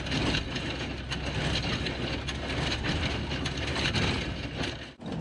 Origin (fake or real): real